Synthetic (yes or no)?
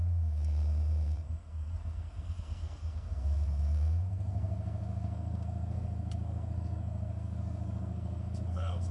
yes